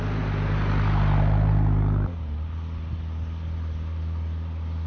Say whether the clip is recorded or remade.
recorded